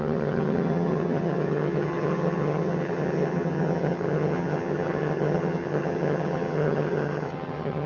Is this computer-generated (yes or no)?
yes